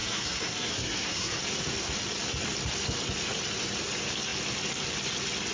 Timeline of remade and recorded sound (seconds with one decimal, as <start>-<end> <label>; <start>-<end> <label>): 0.0-1.4 remade; 1.4-5.5 recorded